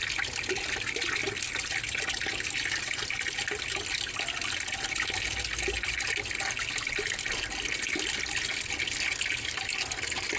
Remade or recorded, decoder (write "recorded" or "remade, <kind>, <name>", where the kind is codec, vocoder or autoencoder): recorded